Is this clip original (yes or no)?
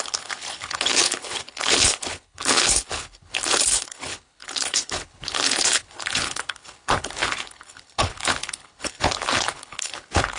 no